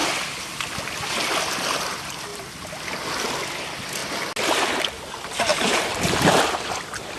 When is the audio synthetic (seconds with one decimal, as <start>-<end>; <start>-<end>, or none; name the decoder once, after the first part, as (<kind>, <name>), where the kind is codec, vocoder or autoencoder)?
2.3-2.8 (vocoder, BigVGAN v2); 5.5-6.7